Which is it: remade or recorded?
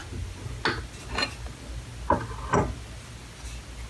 recorded